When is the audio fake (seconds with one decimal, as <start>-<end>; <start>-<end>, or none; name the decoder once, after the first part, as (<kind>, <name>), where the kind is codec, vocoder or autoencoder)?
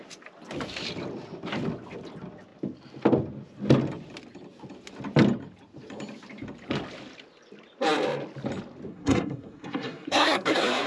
8.9-10.9 (codec, SNAC)